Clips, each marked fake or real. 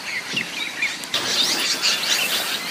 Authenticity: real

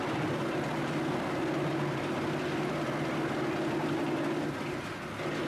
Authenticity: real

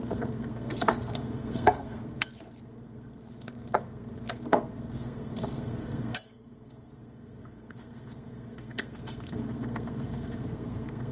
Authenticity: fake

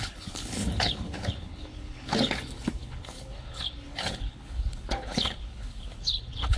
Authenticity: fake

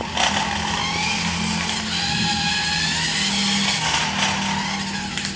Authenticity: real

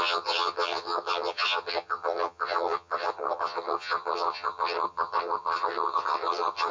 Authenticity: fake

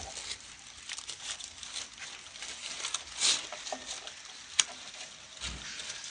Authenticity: real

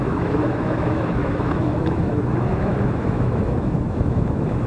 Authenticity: fake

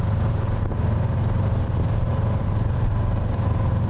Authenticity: fake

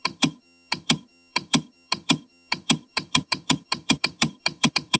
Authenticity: fake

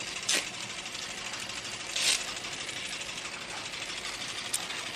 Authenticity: real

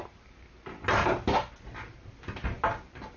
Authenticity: real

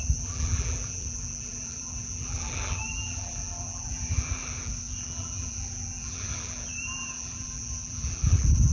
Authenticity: fake